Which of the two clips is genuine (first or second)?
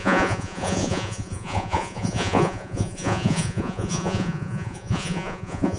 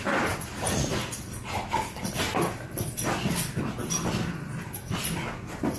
second